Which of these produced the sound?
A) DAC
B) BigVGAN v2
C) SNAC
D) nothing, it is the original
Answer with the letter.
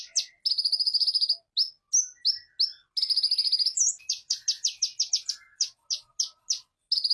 D